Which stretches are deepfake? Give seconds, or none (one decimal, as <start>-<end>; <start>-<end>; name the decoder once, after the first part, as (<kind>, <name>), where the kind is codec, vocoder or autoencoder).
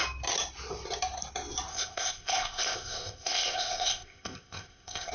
1.7-5.1 (codec, ZipCodec)